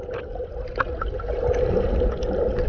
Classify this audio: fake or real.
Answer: real